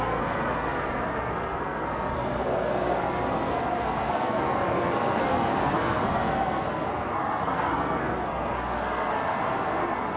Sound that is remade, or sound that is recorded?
remade